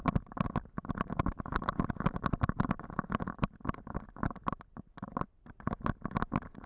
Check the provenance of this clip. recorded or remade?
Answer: recorded